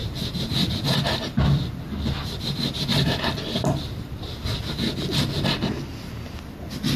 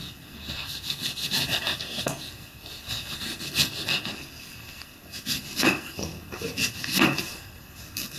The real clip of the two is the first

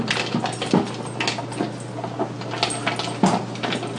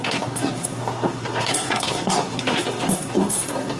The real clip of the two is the first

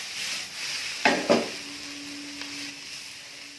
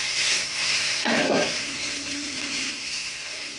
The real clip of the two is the first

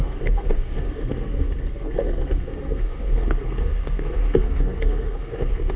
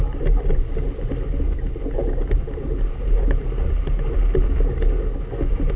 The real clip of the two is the second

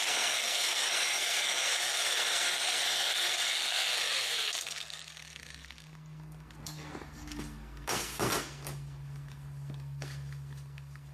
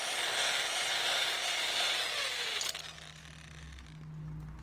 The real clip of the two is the second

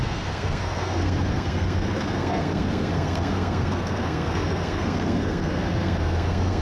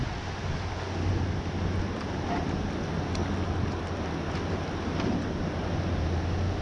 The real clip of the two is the second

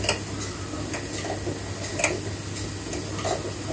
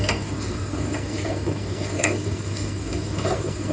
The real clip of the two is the first